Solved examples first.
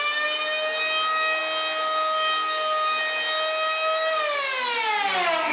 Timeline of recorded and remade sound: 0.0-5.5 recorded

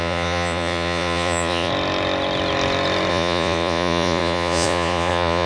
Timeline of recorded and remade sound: 0.0-1.7 remade; 1.7-3.1 recorded; 3.1-5.5 remade

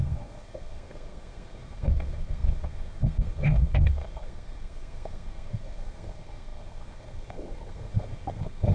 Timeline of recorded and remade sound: 0.0-8.7 remade

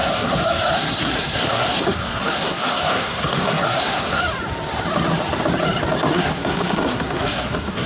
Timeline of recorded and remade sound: 0.0-4.2 remade; 4.2-6.1 recorded; 6.1-7.9 remade